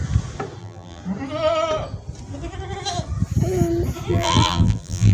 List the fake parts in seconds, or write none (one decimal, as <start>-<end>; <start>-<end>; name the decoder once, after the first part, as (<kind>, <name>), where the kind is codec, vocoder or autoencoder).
0.6-1.0 (vocoder, BigVGAN v2); 4.1-5.1